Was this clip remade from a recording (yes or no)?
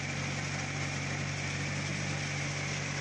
no